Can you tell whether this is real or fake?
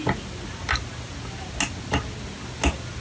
real